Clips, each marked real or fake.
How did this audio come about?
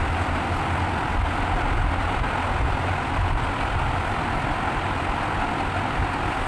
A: real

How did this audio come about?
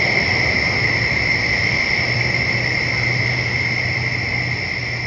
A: real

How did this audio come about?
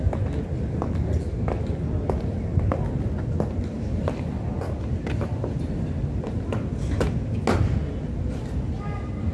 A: real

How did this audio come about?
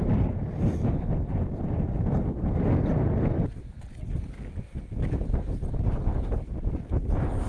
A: real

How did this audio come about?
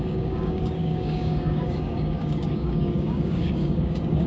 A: fake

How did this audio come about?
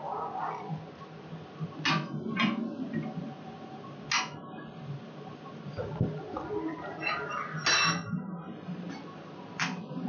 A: real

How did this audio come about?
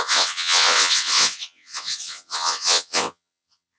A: fake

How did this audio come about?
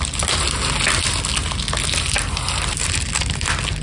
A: real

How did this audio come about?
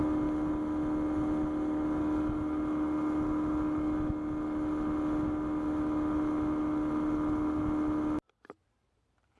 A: real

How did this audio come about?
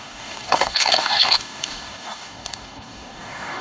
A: fake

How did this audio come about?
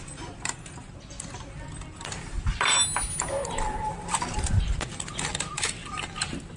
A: real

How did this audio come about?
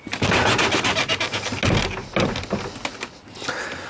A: real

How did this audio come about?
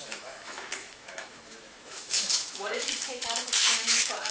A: fake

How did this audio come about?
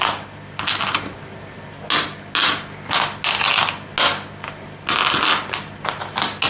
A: real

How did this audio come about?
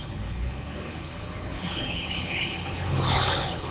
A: fake